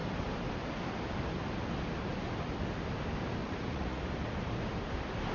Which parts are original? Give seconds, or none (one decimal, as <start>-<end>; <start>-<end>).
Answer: 0.0-3.4; 4.0-5.3